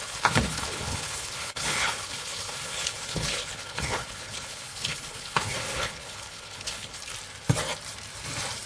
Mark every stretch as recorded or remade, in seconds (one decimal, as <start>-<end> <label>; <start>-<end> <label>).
0.0-7.0 remade; 7.0-8.7 recorded